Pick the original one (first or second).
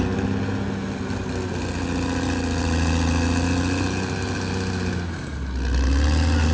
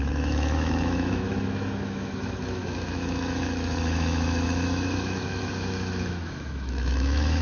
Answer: first